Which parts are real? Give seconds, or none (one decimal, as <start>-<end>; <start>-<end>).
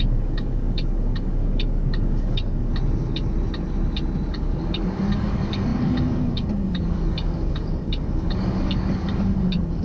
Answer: 2.7-4.3